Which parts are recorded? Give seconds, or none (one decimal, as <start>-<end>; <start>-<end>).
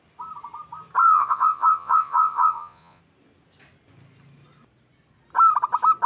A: 0.0-1.0; 3.0-6.1